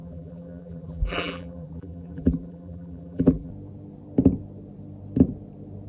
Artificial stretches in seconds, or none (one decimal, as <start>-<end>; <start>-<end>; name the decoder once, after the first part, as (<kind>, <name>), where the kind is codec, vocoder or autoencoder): 0.0-3.5 (vocoder, BigVGAN v2)